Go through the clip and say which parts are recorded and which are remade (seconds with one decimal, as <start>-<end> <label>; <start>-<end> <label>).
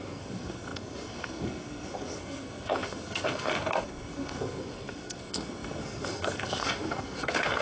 0.0-7.6 remade